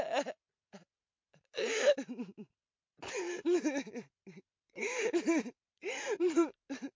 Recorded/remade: remade